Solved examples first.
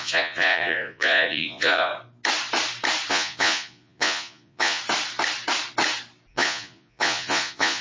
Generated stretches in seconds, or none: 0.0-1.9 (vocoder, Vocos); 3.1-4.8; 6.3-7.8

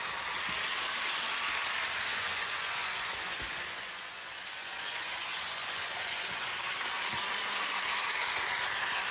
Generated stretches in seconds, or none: 2.1-6.5 (vocoder, Vocos)

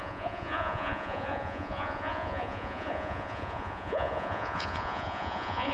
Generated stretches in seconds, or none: 0.0-5.7 (vocoder, Vocos)

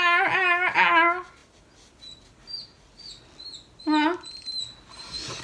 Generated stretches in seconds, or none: none